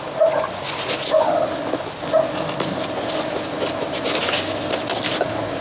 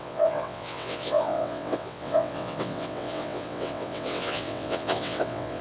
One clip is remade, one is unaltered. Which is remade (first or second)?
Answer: second